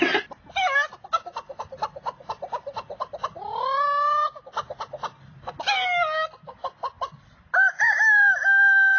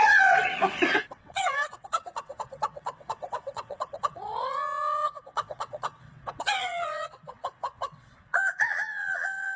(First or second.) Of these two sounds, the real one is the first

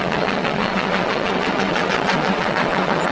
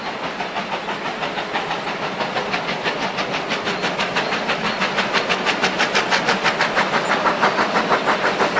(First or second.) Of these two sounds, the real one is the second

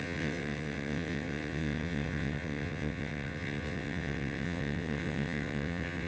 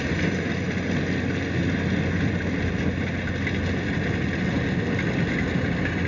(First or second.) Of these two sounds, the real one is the second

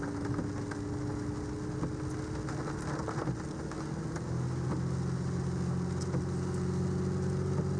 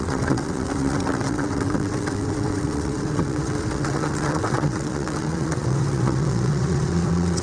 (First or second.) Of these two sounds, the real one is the first